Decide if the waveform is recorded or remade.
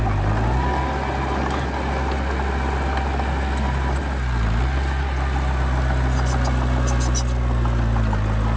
recorded